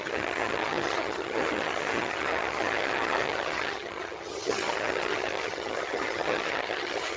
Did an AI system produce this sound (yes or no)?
yes